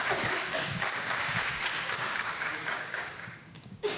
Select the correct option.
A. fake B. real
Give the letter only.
A